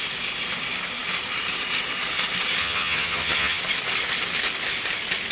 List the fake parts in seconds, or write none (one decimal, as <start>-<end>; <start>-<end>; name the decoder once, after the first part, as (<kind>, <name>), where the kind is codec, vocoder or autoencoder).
2.6-3.6 (vocoder, HiFi-GAN)